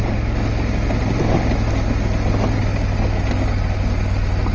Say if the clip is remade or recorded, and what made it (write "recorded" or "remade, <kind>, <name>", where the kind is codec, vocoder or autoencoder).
recorded